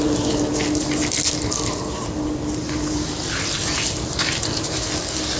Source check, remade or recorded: recorded